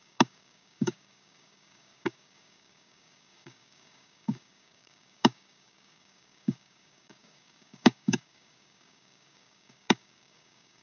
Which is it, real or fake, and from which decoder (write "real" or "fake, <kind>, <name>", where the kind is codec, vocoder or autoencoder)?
fake, codec, DAC